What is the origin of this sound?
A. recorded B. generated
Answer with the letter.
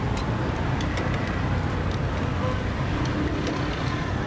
A